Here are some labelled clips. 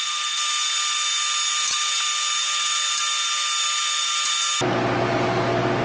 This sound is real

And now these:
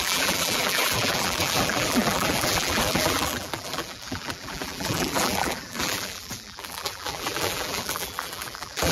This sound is fake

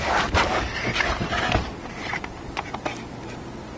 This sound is fake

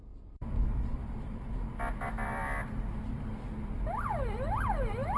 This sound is fake